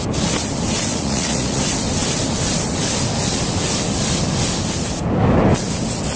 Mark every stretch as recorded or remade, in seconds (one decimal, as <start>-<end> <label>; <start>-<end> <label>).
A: 0.0-0.9 recorded; 0.9-1.6 remade; 1.6-6.2 recorded